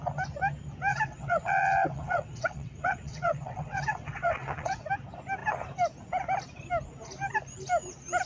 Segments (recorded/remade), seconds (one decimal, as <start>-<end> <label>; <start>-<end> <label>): 0.0-0.9 recorded; 0.9-4.9 remade; 4.9-8.3 recorded